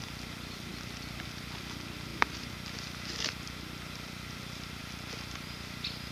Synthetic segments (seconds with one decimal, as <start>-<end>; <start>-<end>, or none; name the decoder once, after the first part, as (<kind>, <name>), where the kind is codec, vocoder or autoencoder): none